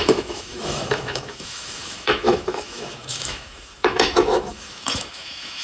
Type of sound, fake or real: fake